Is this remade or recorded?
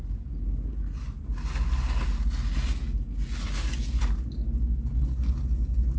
recorded